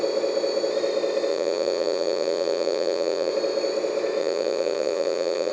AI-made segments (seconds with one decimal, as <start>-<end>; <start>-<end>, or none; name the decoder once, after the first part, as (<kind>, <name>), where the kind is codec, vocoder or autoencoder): 1.3-3.3 (vocoder, Vocos); 4.2-5.5